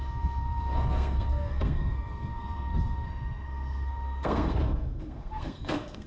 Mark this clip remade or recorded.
remade